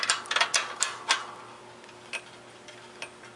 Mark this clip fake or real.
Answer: real